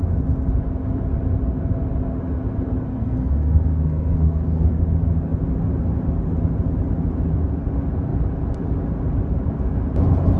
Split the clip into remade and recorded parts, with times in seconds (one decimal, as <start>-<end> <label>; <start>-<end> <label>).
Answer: 0.0-2.9 recorded; 2.9-4.8 remade; 4.8-10.4 recorded